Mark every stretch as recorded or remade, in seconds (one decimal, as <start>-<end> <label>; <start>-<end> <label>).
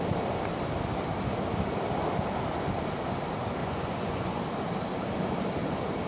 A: 0.0-3.6 recorded; 3.6-4.4 remade; 4.4-6.1 recorded